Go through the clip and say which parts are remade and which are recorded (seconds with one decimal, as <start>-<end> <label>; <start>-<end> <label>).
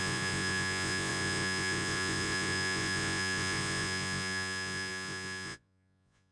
0.0-6.3 remade